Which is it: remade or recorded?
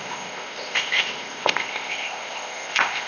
remade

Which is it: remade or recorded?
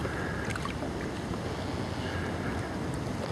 recorded